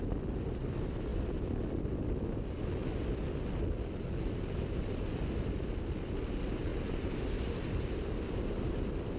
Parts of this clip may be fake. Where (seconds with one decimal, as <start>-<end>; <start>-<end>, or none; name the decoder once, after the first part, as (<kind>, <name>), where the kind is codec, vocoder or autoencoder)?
none